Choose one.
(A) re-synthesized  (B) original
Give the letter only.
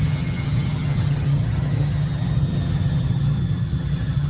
A